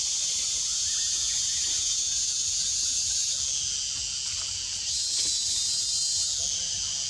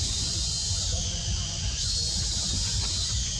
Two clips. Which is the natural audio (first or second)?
first